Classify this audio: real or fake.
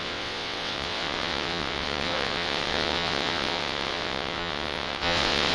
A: fake